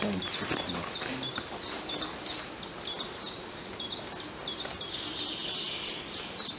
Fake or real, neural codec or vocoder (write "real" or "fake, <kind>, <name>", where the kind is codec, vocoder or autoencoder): real